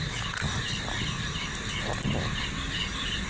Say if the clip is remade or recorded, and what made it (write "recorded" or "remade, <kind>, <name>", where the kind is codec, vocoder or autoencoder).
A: recorded